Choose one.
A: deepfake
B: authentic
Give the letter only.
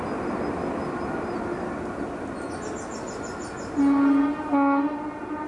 B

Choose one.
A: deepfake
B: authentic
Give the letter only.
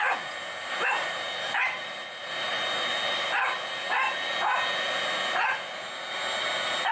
B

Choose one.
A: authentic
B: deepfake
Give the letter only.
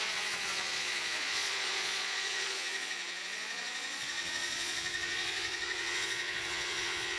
B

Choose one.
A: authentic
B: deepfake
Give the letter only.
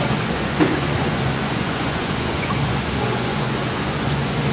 B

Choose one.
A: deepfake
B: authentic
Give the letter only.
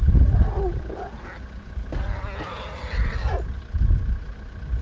B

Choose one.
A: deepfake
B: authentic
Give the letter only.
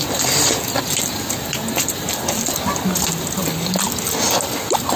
B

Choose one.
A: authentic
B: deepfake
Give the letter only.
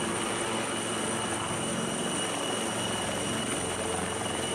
A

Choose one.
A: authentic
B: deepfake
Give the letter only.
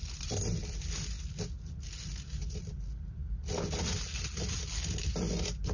A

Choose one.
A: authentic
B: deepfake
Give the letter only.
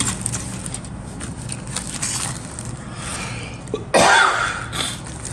A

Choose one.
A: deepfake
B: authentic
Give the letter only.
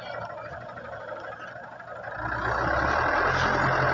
B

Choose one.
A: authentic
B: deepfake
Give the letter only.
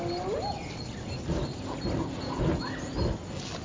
A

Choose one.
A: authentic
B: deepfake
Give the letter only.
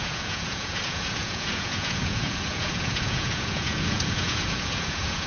B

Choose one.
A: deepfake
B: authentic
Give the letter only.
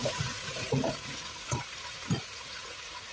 A